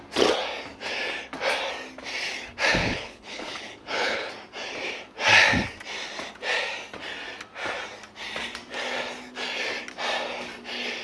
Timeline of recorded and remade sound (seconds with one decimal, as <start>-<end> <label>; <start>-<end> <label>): 0.0-2.8 recorded; 2.8-4.3 remade; 4.3-11.0 recorded